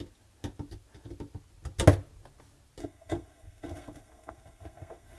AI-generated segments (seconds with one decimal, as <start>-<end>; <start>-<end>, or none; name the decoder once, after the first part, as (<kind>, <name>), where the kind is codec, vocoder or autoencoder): 2.8-5.2 (codec, SNAC)